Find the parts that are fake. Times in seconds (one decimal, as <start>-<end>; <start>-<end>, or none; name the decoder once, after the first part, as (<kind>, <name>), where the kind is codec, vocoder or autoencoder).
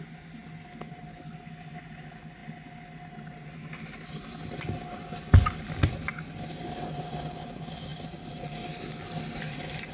none